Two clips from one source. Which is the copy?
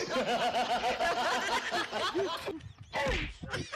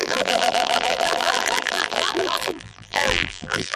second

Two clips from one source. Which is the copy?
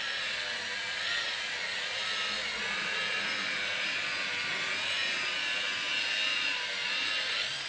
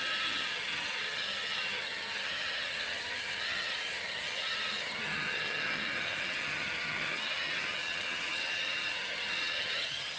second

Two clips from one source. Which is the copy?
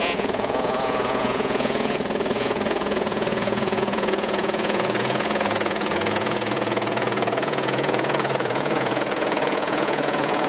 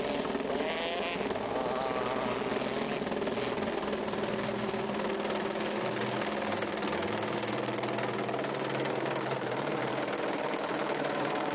first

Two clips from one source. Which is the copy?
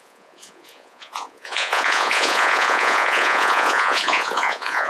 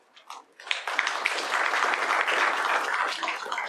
first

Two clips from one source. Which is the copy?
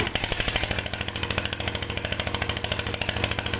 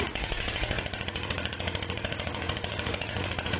second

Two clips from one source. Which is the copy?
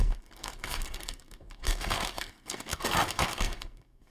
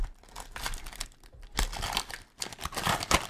first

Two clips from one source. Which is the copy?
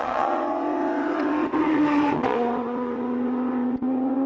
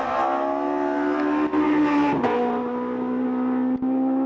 first